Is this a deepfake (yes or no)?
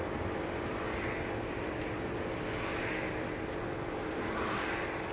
no